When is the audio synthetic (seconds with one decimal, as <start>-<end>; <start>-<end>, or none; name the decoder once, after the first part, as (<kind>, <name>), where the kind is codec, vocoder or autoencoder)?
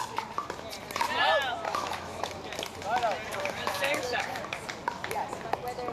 1.7-2.3 (autoencoder, DAC-VAE); 3.3-4.4